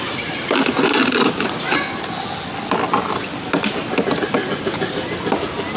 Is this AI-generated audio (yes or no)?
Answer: no